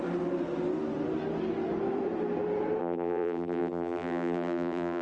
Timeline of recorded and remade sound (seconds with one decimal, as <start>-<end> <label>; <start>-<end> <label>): 0.0-2.8 recorded; 2.8-5.0 remade